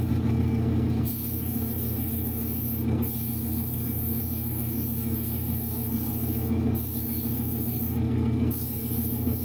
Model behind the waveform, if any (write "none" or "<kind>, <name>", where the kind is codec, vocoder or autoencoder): codec, SNAC